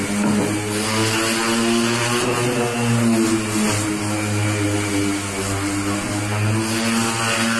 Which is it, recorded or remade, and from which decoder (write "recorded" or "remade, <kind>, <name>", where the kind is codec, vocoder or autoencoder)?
recorded